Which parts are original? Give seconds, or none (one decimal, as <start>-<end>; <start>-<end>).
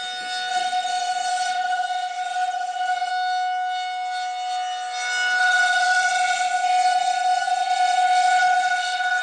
0.0-0.5; 3.1-5.4